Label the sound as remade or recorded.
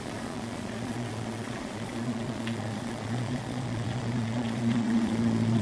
remade